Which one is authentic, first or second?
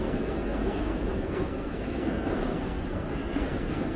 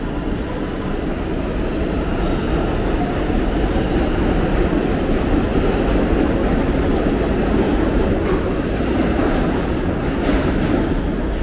second